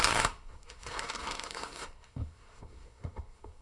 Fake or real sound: fake